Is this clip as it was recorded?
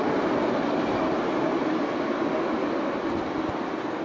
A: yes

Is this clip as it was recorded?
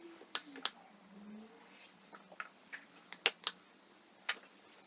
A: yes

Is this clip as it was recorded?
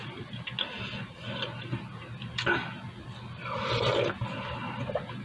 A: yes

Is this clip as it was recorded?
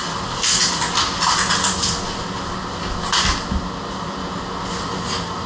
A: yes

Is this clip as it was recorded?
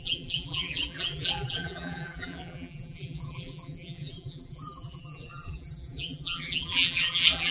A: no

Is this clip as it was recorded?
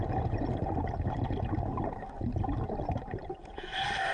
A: yes